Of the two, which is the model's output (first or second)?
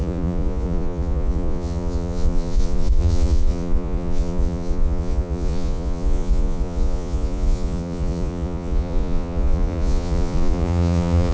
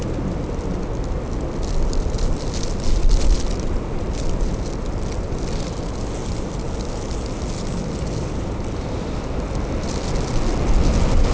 first